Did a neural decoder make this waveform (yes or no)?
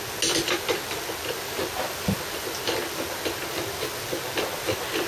no